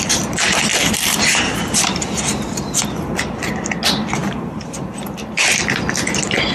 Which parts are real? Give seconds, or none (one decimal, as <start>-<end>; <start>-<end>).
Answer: 0.0-0.7; 2.8-4.2; 5.0-6.5